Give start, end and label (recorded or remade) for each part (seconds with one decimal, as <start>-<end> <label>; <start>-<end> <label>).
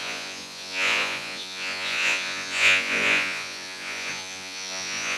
0.0-5.2 remade